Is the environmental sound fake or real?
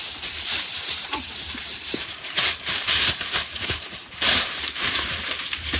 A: fake